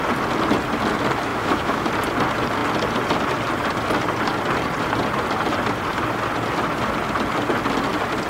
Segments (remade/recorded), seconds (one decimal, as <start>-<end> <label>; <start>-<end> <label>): 0.0-1.3 recorded; 1.3-1.9 remade; 1.9-8.3 recorded